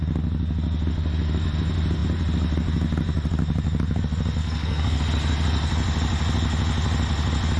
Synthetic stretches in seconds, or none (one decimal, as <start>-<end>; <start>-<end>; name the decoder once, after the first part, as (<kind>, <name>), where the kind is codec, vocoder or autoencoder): 4.4-5.0 (codec, SNAC)